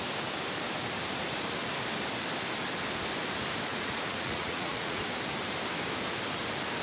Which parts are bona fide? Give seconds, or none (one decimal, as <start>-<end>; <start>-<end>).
0.0-3.7; 5.0-6.8